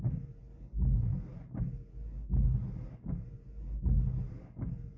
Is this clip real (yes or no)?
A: yes